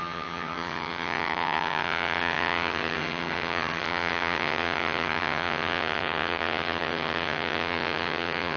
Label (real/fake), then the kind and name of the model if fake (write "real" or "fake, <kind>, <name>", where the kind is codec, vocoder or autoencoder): fake, vocoder, HiFi-GAN